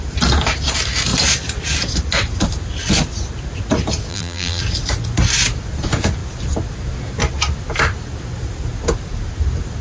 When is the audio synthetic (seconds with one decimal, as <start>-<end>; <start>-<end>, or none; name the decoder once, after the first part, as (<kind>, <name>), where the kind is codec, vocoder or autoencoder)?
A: 4.1-4.6 (vocoder, BigVGAN v2)